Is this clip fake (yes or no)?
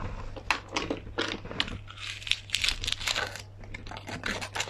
no